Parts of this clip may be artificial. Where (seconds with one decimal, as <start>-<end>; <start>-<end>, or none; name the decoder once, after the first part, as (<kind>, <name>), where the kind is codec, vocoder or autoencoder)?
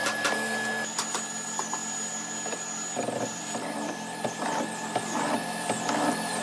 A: none